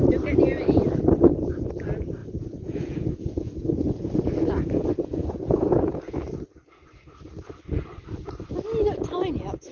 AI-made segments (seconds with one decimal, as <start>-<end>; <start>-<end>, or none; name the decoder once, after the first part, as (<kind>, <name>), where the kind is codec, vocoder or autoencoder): 2.2-4.0 (vocoder, Vocos); 5.2-6.2